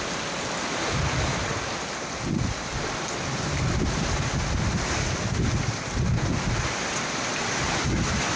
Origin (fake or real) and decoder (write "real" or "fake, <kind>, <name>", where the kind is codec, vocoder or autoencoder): real